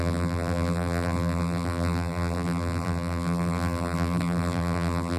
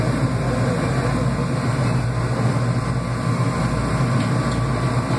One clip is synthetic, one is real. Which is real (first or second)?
second